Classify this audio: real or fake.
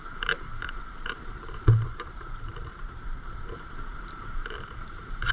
fake